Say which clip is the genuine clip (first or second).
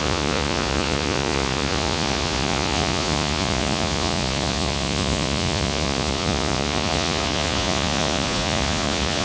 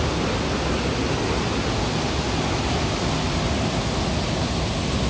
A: second